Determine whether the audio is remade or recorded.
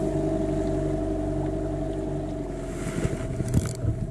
recorded